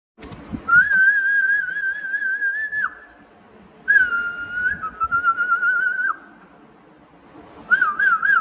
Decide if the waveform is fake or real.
real